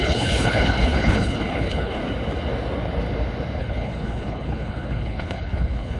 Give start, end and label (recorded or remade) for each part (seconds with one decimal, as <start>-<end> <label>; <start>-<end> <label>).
0.0-2.0 remade; 2.0-3.6 recorded; 3.6-6.0 remade